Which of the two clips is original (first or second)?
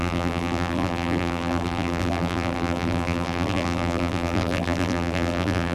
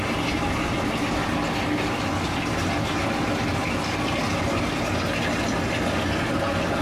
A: second